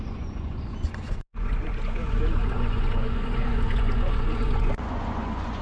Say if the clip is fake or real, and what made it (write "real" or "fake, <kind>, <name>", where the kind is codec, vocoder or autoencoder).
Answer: fake, vocoder, Vocos